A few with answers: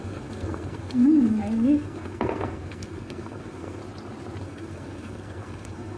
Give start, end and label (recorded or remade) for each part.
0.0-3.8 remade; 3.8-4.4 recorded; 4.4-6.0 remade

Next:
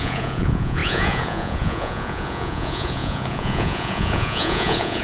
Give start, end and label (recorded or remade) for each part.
0.0-5.0 remade

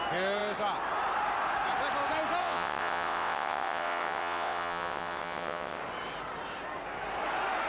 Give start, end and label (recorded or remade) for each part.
0.0-2.4 recorded; 2.4-5.8 remade; 5.8-7.7 recorded

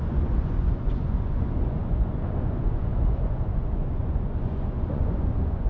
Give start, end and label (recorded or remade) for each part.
0.0-5.7 remade

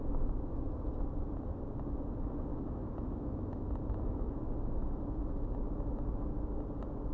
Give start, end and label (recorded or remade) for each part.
0.0-2.5 recorded; 2.5-6.6 remade; 6.6-7.1 recorded

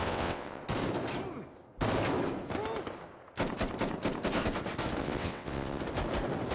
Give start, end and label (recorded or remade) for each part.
0.0-0.6 remade; 0.6-5.0 recorded; 5.0-5.8 remade; 5.8-6.5 recorded

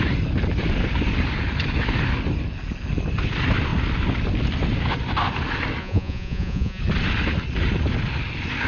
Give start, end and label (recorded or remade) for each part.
0.0-5.8 recorded; 5.8-6.8 remade; 6.8-8.7 recorded

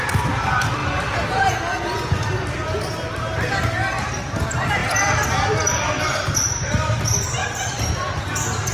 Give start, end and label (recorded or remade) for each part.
0.0-0.8 recorded; 0.8-1.4 remade; 1.4-4.8 recorded; 4.8-5.3 remade; 5.3-7.4 recorded; 7.4-8.2 remade; 8.2-8.7 recorded